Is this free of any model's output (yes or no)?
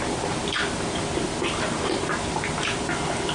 yes